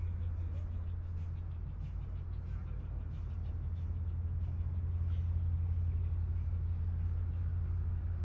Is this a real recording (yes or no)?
yes